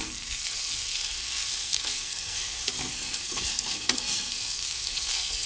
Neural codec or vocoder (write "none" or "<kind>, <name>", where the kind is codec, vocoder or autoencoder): codec, SNAC